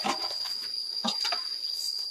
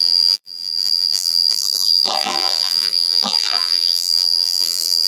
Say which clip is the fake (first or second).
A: second